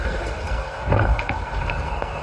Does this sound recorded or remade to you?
remade